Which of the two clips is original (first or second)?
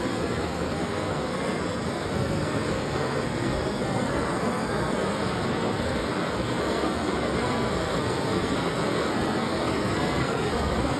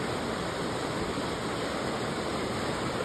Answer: second